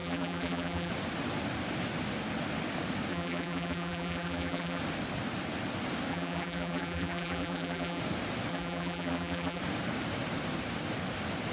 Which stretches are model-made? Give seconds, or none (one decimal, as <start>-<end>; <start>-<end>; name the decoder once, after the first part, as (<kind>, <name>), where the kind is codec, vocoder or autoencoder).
0.0-0.9 (vocoder, BigVGAN v2); 3.1-4.8; 6.1-8.0; 8.5-9.6